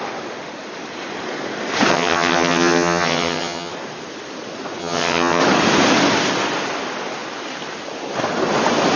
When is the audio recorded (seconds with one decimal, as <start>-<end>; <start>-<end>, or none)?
0.0-1.9; 3.7-4.8; 5.4-9.0